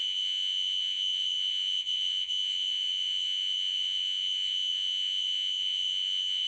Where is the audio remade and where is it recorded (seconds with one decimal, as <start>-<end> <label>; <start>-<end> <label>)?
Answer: 0.0-6.5 remade